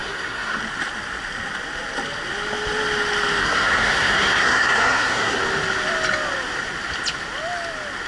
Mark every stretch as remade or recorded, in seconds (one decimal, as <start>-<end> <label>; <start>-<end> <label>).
0.0-0.6 remade; 0.6-3.4 recorded; 3.4-5.4 remade; 5.4-8.1 recorded